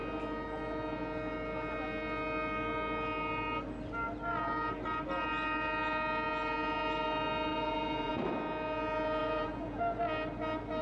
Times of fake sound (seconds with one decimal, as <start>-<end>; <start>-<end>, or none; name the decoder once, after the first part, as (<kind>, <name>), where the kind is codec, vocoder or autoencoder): 7.5-8.1 (vocoder, Vocos); 9.2-9.8